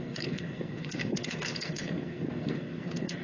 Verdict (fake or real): fake